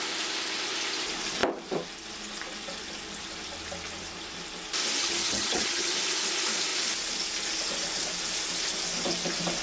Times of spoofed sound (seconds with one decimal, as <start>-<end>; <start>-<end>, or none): 5.0-5.9